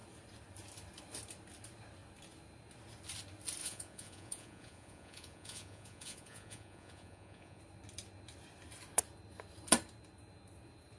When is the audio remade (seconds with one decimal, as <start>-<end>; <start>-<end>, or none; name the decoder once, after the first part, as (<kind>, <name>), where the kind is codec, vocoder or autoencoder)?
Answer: 3.6-7.6 (vocoder, Vocos)